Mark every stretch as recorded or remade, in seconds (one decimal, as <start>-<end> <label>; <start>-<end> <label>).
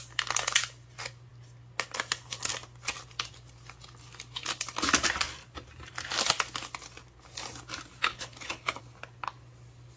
0.0-8.0 recorded; 8.0-8.8 remade; 8.8-10.0 recorded